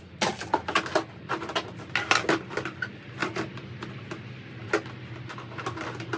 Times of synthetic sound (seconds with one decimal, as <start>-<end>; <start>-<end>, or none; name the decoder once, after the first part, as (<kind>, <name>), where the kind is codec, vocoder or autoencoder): none